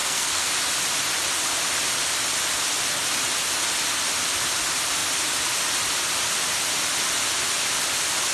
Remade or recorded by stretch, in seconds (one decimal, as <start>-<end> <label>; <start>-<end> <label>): 0.0-0.5 remade; 0.5-8.3 recorded